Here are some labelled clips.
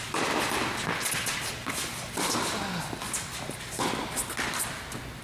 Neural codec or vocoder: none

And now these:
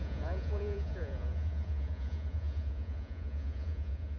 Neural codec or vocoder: vocoder, Vocos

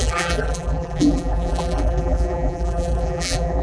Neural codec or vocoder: vocoder, BigVGAN v2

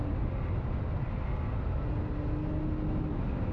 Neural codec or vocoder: none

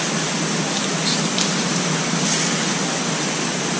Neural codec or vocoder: none